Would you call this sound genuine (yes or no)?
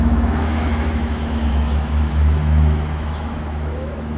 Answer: no